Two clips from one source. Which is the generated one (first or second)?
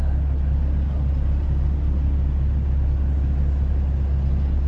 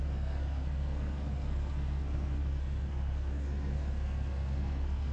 second